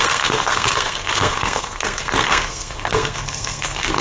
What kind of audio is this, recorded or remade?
remade